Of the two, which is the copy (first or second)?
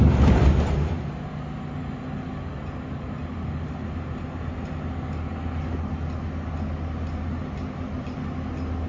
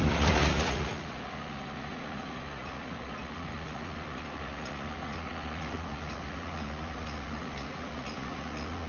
second